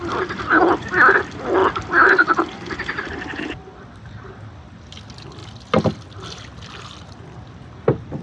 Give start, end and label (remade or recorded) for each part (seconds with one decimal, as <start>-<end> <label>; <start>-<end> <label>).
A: 0.0-8.2 recorded